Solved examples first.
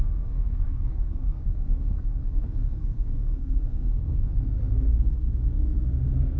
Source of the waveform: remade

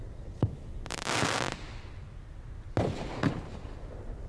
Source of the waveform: recorded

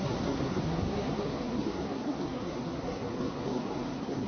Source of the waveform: remade